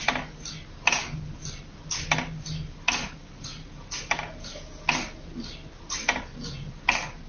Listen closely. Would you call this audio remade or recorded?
recorded